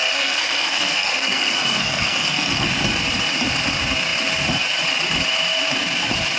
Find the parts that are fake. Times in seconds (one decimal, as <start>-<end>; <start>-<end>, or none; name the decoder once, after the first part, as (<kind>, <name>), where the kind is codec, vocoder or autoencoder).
0.0-2.7 (codec, SNAC)